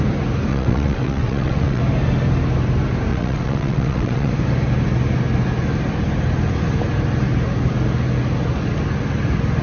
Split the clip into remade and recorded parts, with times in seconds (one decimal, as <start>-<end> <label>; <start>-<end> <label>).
0.0-0.5 recorded; 0.5-1.8 remade; 1.8-3.1 recorded; 3.1-4.3 remade; 4.3-9.6 recorded